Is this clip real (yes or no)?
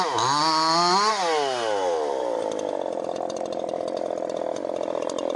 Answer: yes